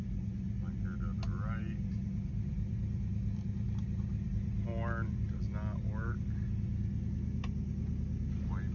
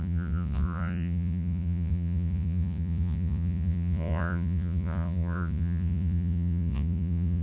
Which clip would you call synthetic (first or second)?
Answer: second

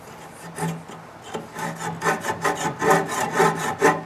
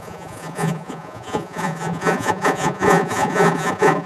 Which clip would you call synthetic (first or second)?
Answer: second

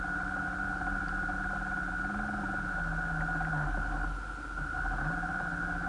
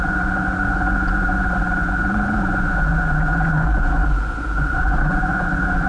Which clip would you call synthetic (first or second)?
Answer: second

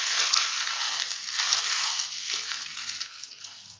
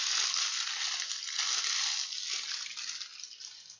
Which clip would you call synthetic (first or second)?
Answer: first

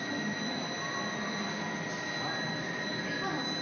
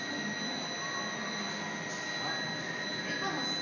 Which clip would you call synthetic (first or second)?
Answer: first